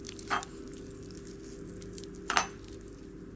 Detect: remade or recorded recorded